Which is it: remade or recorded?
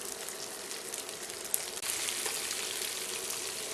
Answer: recorded